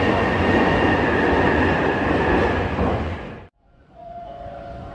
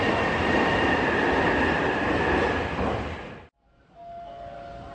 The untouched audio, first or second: second